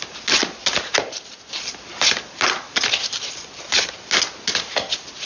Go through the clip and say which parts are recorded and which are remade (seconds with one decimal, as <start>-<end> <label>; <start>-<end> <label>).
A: 0.0-5.3 recorded